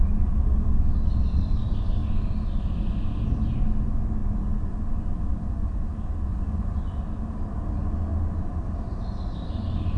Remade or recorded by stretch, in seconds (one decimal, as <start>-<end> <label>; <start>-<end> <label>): 0.0-6.3 recorded; 6.3-7.0 remade; 7.0-10.0 recorded